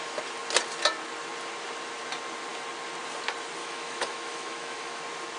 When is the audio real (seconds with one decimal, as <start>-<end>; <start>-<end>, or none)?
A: 0.0-3.6; 5.0-5.4